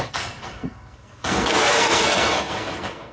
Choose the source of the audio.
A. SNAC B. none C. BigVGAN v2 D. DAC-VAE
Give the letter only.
A